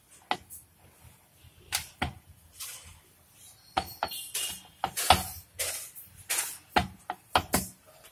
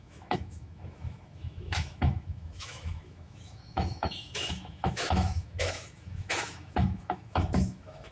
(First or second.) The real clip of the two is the first